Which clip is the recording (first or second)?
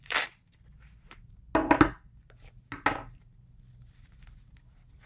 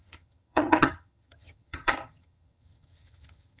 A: first